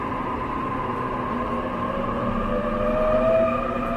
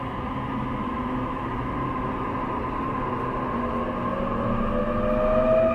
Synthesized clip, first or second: first